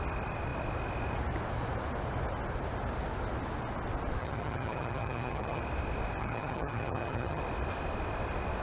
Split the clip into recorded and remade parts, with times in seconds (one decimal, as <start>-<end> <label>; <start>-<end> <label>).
0.0-4.2 recorded; 4.2-5.6 remade; 5.6-6.2 recorded; 6.2-7.4 remade; 7.4-8.6 recorded